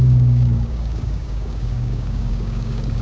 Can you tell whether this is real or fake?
fake